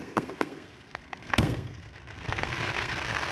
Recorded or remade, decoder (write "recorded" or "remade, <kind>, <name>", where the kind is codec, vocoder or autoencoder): remade, codec, SNAC